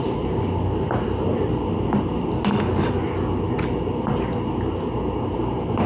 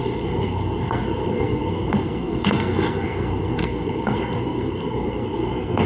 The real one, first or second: first